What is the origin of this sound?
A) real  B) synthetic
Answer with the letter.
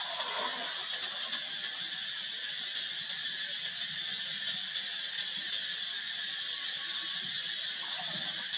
A